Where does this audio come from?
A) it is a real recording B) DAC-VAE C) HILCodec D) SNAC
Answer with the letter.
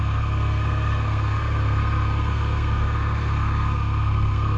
D